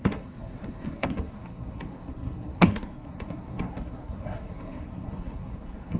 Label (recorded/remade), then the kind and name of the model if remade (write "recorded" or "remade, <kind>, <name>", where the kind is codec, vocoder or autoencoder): remade, codec, SNAC